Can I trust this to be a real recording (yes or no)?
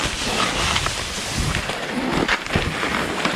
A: yes